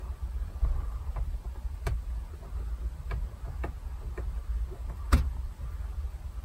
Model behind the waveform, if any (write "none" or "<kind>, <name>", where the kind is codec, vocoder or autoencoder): none